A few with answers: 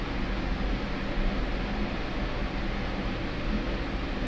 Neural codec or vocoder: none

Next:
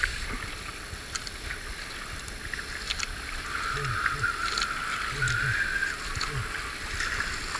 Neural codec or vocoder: none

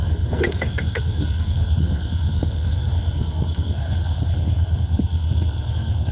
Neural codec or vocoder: codec, SNAC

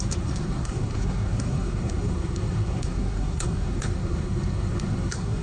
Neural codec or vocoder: codec, SNAC